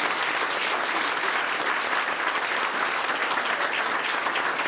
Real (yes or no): yes